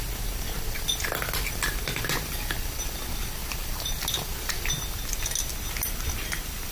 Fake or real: real